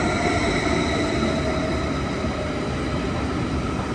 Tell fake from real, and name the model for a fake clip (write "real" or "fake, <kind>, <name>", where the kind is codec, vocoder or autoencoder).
real